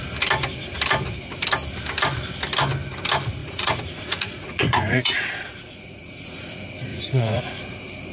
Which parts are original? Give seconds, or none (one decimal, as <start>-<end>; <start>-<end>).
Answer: 0.0-3.4; 6.5-6.9; 7.4-8.1